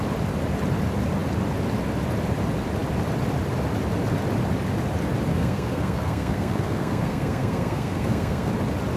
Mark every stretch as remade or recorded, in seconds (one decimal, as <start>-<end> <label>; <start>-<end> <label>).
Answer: 0.0-5.3 recorded; 5.3-8.5 remade; 8.5-9.0 recorded